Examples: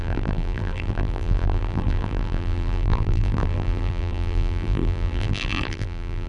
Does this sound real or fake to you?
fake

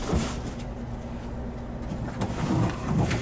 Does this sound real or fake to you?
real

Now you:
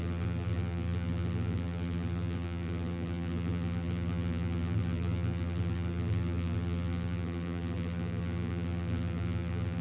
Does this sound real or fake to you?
fake